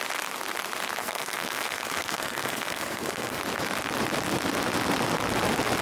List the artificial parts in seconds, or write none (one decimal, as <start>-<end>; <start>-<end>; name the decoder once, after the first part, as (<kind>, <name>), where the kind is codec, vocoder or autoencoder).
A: 1.0-3.4 (codec, SNAC)